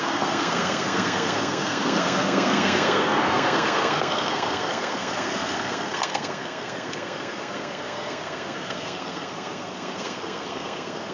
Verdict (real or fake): fake